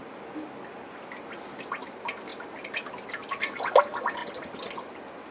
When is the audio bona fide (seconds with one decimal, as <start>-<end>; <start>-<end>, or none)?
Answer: 0.0-5.3